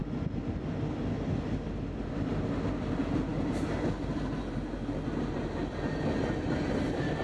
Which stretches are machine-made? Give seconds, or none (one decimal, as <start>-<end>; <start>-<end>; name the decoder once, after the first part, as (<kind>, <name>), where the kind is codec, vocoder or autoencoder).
none